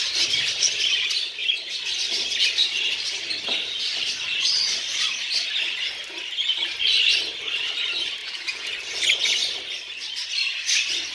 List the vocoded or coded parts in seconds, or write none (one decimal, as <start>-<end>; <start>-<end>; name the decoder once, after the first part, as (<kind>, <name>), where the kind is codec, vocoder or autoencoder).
8.2-8.7 (vocoder, Vocos)